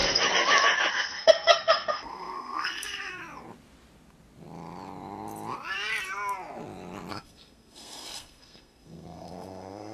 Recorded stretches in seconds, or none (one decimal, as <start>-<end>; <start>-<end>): 0.0-0.9; 3.2-7.1